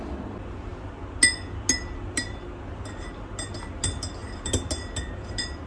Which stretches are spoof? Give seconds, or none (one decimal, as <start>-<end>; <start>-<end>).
none